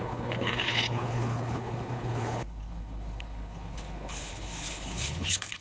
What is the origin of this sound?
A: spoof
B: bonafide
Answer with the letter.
A